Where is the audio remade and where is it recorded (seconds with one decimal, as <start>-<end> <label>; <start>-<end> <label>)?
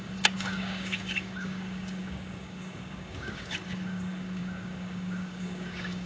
0.0-6.1 remade